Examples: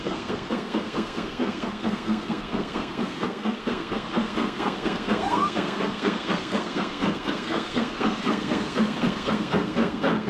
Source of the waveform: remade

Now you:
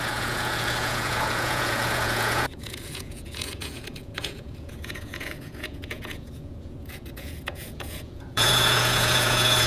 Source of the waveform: remade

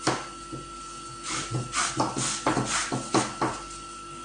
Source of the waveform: recorded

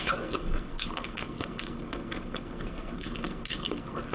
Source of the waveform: remade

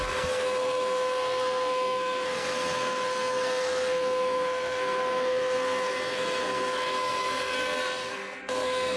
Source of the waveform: remade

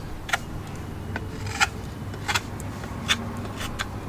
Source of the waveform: recorded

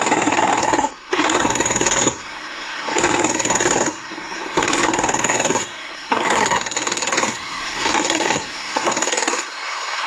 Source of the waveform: remade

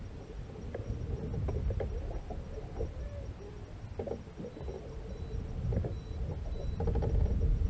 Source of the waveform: recorded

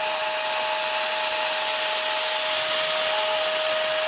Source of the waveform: recorded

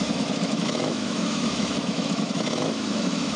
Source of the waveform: remade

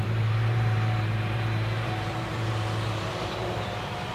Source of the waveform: remade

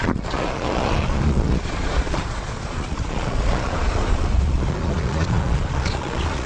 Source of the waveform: remade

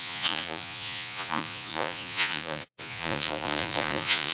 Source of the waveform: remade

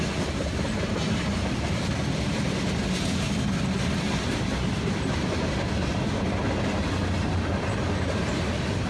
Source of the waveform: recorded